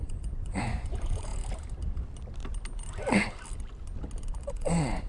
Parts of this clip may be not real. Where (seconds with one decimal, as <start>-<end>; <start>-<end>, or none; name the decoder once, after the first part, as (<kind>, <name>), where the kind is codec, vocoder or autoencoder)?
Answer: 0.0-1.3 (vocoder, Vocos); 4.4-5.1